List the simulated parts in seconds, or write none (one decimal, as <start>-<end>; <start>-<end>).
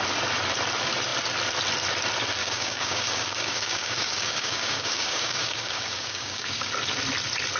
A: 2.4-6.7